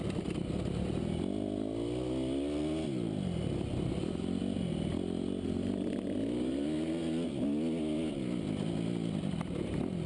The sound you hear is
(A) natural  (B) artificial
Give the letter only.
A